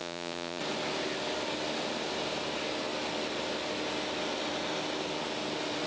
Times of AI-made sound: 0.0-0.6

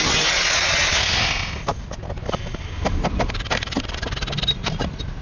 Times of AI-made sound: none

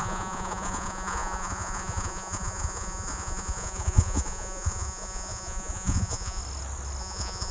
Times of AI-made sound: 0.0-6.4; 7.0-7.5